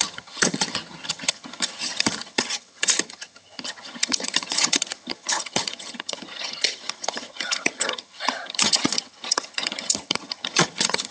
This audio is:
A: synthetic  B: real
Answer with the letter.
A